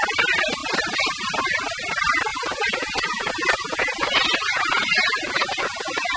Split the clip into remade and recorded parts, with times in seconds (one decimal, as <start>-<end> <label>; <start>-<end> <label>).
0.0-2.3 recorded; 2.3-6.2 remade